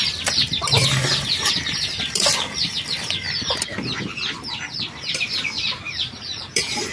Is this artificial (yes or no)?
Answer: yes